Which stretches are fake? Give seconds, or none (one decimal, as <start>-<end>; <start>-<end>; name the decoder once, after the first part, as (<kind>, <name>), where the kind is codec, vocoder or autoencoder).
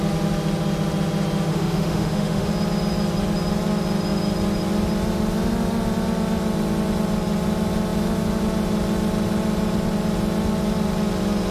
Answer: 1.5-2.5 (autoencoder, DAC-VAE)